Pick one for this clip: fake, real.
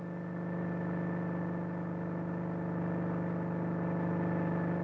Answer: real